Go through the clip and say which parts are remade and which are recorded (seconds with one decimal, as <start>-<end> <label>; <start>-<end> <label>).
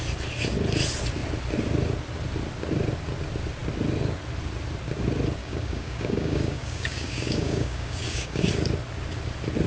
0.0-5.4 recorded; 5.4-8.5 remade; 8.5-9.7 recorded